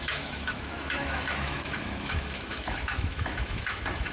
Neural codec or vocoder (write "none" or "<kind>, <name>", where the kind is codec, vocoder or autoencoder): autoencoder, DAC-VAE